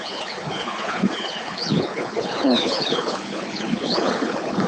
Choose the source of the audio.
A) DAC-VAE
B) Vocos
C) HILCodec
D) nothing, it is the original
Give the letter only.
C